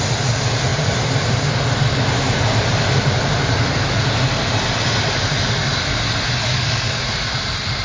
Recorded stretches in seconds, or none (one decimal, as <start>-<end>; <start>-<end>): 0.0-6.4; 7.0-7.8